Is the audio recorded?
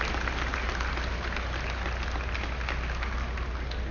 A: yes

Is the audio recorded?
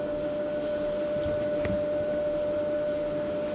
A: yes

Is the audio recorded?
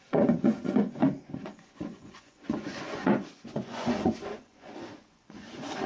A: no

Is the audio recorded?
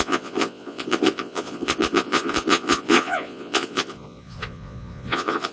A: no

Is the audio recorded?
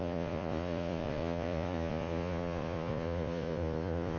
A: no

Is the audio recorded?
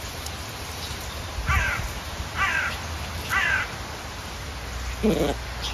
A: yes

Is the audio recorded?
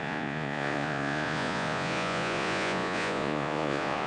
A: no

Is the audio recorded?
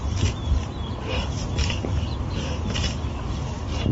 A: yes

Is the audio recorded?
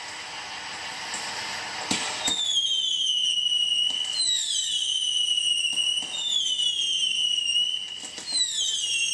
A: yes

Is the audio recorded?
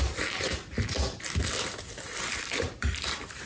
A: yes